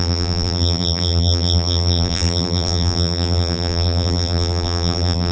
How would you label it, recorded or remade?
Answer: remade